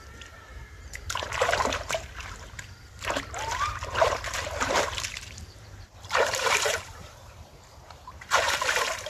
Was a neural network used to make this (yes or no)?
yes